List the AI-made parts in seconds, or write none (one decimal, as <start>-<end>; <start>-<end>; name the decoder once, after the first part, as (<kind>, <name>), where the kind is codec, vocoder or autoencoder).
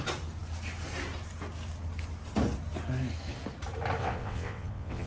4.0-5.1 (vocoder, WaveNeXt)